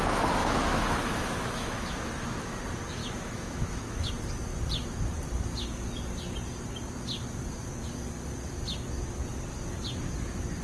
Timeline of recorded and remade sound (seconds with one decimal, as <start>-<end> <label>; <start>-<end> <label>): 0.0-0.4 recorded; 0.4-2.6 remade; 2.6-3.0 recorded; 3.0-4.1 remade; 4.1-10.6 recorded